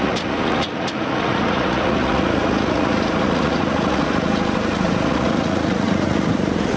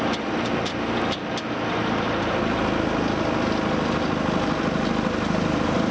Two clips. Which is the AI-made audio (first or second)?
first